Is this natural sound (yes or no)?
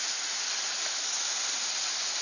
yes